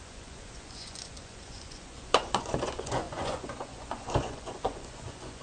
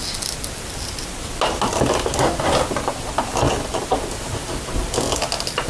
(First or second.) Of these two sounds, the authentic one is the second